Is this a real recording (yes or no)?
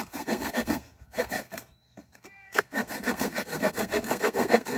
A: no